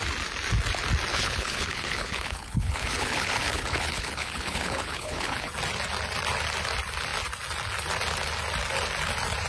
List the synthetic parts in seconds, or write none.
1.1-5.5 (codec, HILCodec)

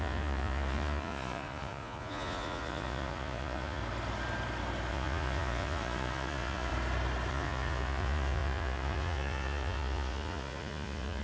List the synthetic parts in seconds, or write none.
0.0-3.8 (vocoder, Vocos); 4.9-6.7; 7.3-11.2

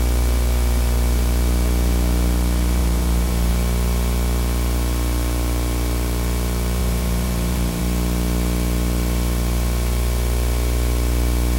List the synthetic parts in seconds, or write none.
2.8-3.5 (vocoder, BigVGAN v2); 6.8-7.8